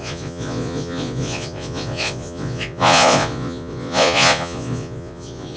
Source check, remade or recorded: remade